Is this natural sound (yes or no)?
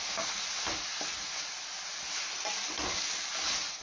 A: yes